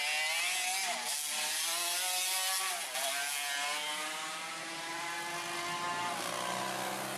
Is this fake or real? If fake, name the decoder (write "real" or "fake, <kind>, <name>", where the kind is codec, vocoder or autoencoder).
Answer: real